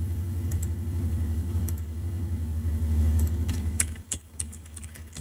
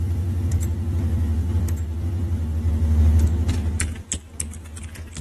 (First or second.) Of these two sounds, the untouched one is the second